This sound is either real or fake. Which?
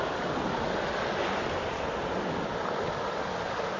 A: real